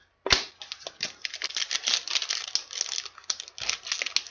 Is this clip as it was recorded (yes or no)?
yes